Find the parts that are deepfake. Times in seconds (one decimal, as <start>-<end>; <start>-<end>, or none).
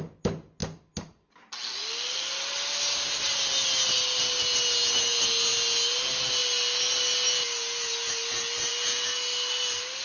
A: none